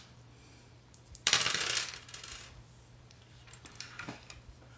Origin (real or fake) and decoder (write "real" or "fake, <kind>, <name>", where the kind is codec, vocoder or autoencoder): fake, vocoder, BigVGAN v2